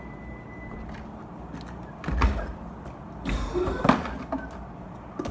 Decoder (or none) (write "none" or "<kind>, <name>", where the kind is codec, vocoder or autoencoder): none